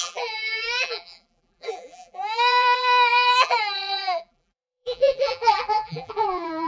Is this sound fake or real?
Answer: fake